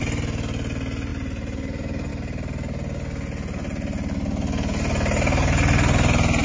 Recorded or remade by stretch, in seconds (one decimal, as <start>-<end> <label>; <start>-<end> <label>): 0.0-6.4 recorded